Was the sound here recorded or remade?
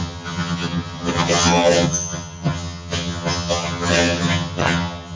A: remade